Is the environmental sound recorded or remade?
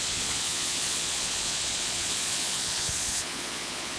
remade